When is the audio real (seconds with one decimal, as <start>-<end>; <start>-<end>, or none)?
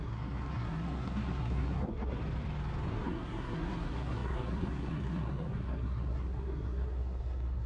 2.2-2.9